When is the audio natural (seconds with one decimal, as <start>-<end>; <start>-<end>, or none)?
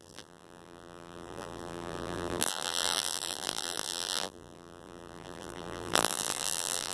none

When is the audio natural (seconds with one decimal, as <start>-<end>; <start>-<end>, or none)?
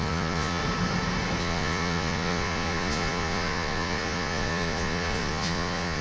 0.6-1.4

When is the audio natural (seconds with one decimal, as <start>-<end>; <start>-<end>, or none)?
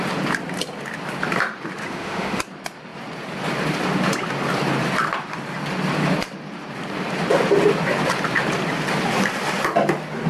0.0-1.8; 2.4-10.3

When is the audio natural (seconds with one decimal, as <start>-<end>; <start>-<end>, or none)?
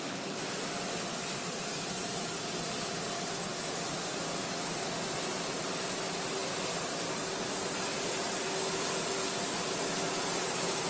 0.0-3.5; 4.2-10.9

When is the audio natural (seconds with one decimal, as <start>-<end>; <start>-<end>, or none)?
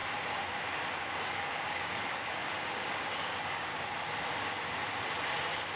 0.0-1.0; 3.7-5.8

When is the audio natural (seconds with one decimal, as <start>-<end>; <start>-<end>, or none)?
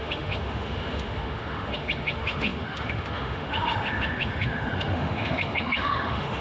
none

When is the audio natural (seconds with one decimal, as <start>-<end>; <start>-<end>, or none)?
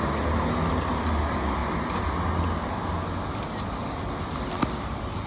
0.0-5.3